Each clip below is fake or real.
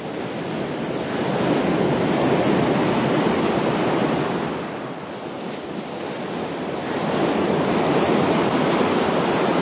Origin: real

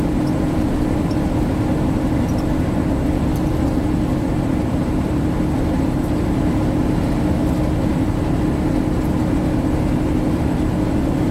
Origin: real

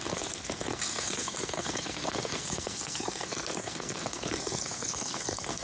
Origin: fake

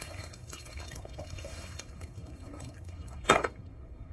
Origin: fake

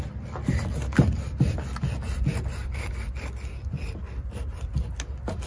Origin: real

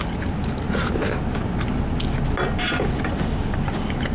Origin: real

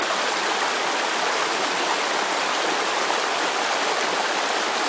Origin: real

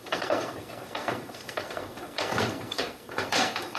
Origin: fake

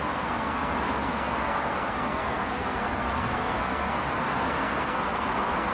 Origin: fake